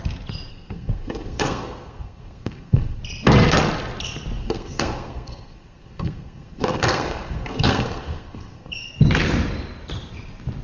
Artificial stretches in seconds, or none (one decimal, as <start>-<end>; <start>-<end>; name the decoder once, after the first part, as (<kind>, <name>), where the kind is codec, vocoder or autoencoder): 0.5-3.0 (codec, SNAC); 4.4-8.8